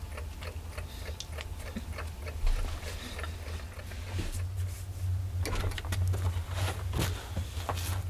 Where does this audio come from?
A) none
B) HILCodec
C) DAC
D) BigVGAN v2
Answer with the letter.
A